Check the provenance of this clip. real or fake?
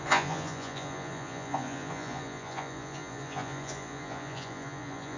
fake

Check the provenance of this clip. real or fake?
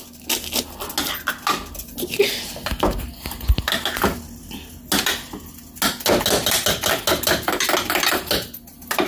real